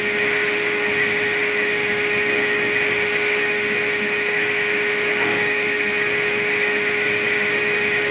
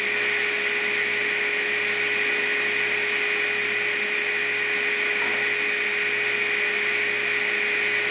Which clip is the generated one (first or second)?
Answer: first